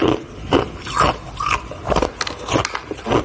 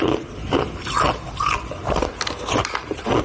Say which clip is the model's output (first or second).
second